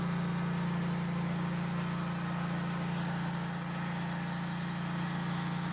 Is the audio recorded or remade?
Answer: recorded